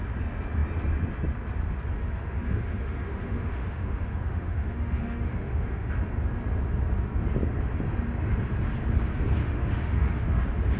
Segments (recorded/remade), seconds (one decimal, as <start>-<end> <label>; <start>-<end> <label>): 0.0-2.0 recorded; 2.0-5.9 remade; 5.9-9.4 recorded; 9.4-10.4 remade; 10.4-10.8 recorded